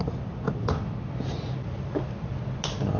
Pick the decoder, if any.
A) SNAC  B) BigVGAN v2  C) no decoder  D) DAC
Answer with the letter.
C